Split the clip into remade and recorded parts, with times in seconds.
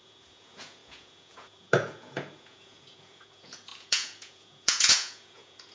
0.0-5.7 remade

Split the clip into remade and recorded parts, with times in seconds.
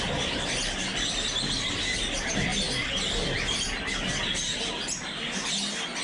0.0-6.0 recorded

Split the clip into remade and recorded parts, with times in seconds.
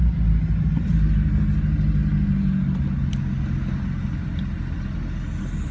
0.0-5.7 recorded